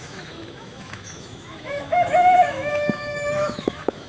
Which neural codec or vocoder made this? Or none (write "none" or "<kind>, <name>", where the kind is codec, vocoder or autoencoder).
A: autoencoder, DAC-VAE